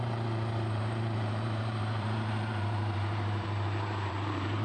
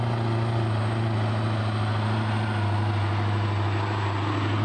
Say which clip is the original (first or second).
second